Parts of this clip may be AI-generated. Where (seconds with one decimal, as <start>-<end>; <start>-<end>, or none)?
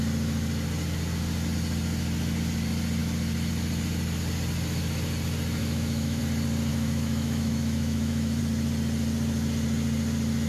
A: 5.6-6.2; 6.7-8.4